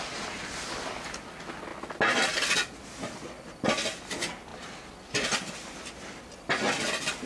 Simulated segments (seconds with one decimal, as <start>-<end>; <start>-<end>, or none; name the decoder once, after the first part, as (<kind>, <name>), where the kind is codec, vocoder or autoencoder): none